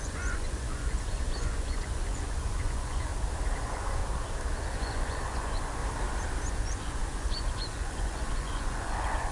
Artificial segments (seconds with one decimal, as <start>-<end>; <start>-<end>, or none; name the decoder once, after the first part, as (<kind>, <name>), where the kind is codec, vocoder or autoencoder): 0.0-3.1 (vocoder, Vocos); 3.6-4.0; 4.8-5.8; 6.5-9.3